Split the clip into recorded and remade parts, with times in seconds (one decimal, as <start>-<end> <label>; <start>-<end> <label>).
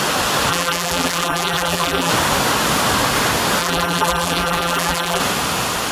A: 0.0-0.5 recorded; 0.5-2.1 remade; 2.1-3.6 recorded; 3.6-5.2 remade; 5.2-5.9 recorded